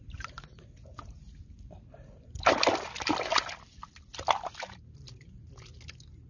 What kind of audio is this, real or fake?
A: real